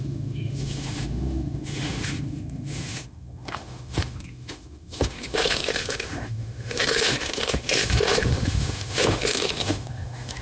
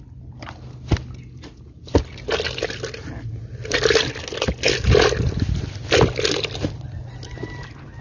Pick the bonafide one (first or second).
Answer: second